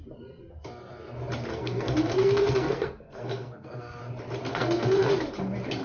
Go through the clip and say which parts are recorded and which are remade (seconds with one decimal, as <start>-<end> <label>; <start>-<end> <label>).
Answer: 0.0-1.5 recorded; 1.5-4.0 remade; 4.0-4.5 recorded; 4.5-5.1 remade; 5.1-5.8 recorded